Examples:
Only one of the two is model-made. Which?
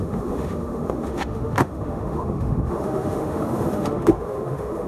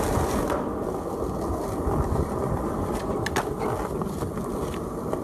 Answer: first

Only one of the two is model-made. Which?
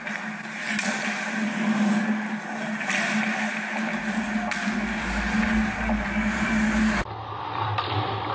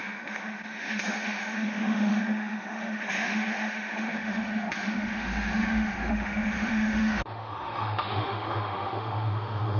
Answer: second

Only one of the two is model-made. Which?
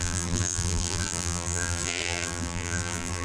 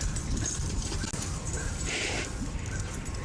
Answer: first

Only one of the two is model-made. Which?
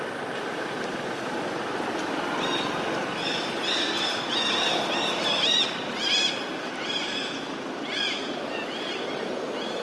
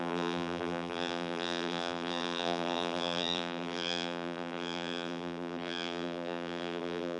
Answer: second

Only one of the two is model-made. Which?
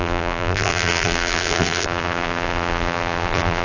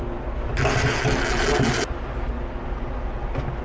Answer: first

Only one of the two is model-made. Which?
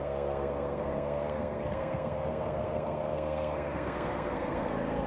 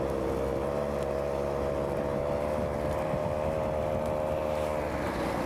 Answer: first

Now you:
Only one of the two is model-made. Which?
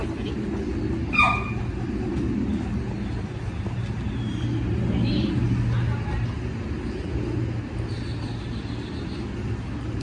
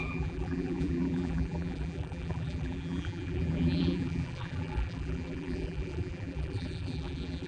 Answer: second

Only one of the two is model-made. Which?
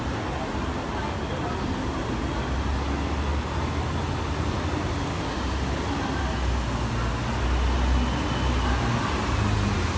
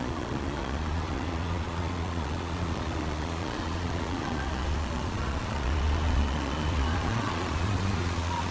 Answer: second